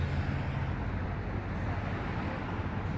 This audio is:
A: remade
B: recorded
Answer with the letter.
B